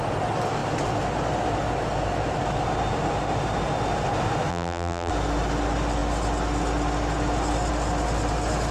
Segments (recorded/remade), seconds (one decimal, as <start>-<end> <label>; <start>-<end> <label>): 0.0-4.5 recorded; 4.5-5.1 remade; 5.1-8.7 recorded